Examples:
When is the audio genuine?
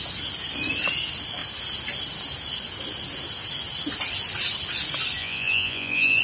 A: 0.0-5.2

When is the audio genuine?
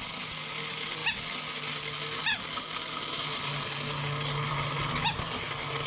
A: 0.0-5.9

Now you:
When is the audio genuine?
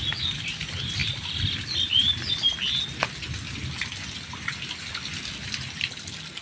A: 0.0-6.4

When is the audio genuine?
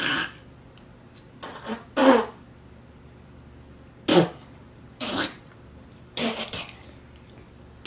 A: 0.0-4.1; 6.4-7.9